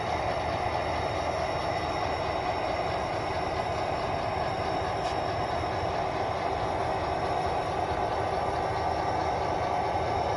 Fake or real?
real